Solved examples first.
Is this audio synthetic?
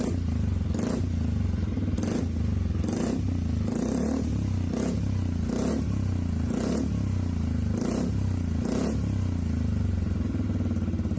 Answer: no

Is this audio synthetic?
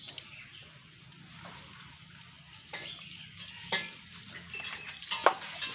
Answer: no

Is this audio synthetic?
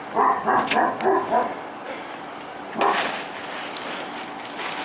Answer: no